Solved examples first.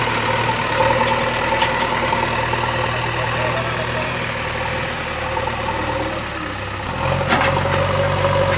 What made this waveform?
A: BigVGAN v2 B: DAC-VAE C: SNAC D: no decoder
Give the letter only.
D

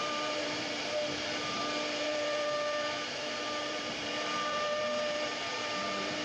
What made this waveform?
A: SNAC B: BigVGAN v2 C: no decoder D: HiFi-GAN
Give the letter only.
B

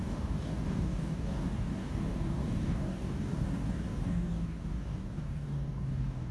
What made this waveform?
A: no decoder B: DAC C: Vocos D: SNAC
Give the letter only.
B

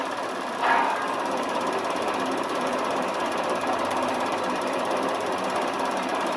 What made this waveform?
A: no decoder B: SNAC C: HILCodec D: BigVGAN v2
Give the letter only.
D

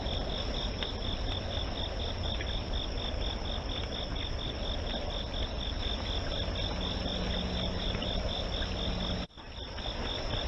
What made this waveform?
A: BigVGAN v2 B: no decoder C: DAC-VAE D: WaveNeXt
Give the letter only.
B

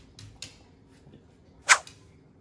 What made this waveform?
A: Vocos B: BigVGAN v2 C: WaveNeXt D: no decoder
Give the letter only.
D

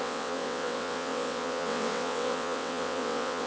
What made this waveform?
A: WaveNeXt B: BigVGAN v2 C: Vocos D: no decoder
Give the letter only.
A